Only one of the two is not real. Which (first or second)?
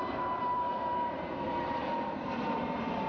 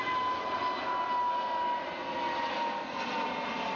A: first